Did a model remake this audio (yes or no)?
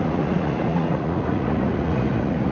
yes